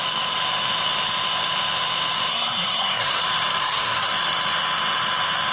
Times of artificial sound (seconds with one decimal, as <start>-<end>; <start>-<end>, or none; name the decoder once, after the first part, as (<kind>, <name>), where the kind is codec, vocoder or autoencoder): 2.3-3.2 (codec, SNAC); 3.6-4.1